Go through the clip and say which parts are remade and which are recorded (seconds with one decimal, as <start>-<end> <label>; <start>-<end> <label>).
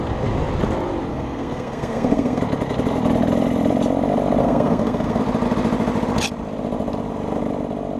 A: 0.0-1.1 recorded; 1.1-2.4 remade; 2.4-4.4 recorded; 4.4-5.2 remade; 5.2-8.0 recorded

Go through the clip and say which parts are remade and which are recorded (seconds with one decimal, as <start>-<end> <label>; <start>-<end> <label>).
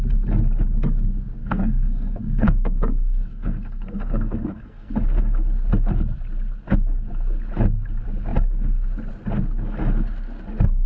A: 0.0-1.4 recorded; 1.4-4.9 remade; 4.9-10.9 recorded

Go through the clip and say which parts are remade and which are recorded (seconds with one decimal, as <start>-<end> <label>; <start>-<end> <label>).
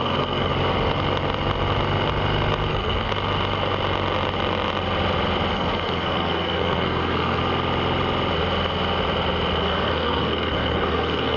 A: 0.0-0.5 remade; 0.5-2.7 recorded; 2.7-3.1 remade; 3.1-5.5 recorded; 5.5-7.4 remade; 7.4-9.6 recorded; 9.6-11.4 remade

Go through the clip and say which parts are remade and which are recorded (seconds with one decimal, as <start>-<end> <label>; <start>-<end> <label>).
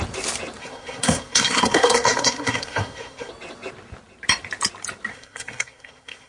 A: 0.0-0.6 recorded; 0.6-3.3 remade; 3.3-5.1 recorded; 5.1-6.3 remade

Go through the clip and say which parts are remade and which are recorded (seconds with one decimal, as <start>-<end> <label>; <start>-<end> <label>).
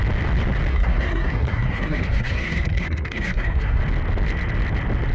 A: 0.0-0.7 recorded; 0.7-3.8 remade; 3.8-5.1 recorded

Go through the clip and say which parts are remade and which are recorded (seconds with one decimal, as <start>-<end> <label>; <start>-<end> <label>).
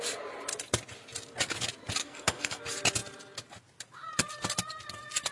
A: 0.0-2.0 recorded; 2.0-2.6 remade; 2.6-5.3 recorded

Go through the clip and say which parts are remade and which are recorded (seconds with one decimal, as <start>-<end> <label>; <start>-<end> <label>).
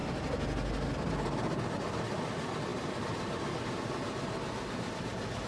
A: 0.0-5.5 recorded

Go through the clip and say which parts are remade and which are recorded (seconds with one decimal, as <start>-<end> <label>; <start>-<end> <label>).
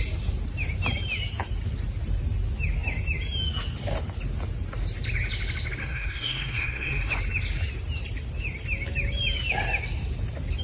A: 0.0-5.8 recorded; 5.8-7.1 remade; 7.1-10.6 recorded